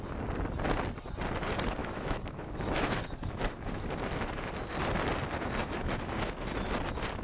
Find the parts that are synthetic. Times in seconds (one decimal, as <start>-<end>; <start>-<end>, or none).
1.8-4.5; 5.6-6.3